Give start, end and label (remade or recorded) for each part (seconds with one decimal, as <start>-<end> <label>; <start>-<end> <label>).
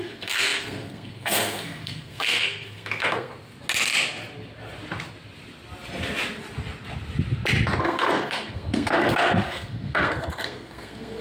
0.0-3.3 remade; 3.3-7.8 recorded; 7.8-11.2 remade